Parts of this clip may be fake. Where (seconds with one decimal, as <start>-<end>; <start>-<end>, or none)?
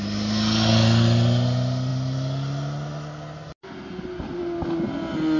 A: none